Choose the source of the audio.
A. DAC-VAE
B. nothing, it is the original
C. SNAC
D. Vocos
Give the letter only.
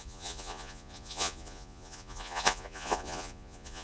D